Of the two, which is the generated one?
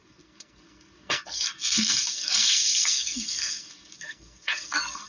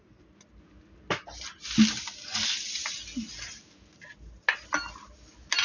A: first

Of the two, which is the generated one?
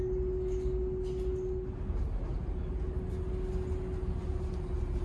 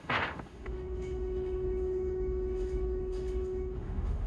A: second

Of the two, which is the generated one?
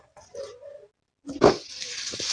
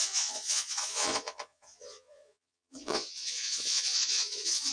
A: second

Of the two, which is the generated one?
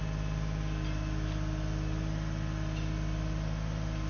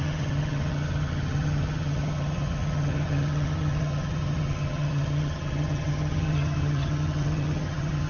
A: second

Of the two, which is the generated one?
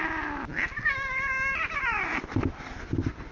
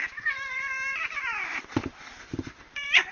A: second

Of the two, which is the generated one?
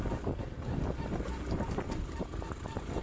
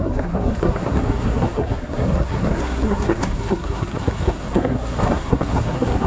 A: second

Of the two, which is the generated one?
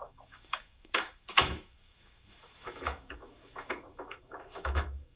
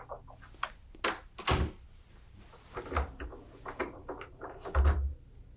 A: first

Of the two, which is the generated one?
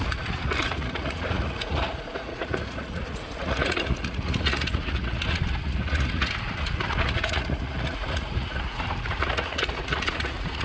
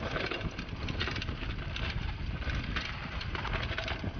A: first